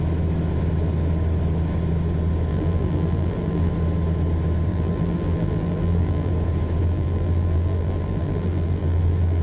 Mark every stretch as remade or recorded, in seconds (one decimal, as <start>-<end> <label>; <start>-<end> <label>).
0.0-2.5 recorded; 2.5-3.7 remade; 3.7-4.7 recorded; 4.7-6.3 remade; 6.3-6.8 recorded; 6.8-9.4 remade